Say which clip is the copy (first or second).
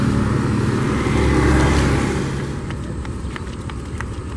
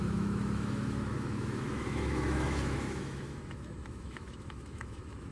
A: second